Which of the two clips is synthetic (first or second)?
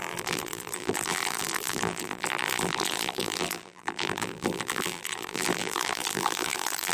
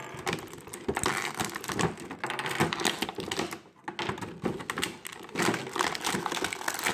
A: first